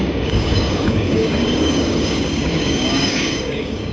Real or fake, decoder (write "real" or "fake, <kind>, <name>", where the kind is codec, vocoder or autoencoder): fake, codec, DAC